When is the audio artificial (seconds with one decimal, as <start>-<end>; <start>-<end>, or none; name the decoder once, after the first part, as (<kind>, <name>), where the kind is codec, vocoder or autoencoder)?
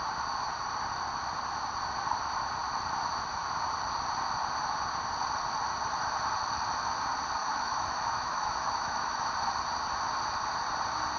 7.4-9.3 (autoencoder, DAC-VAE)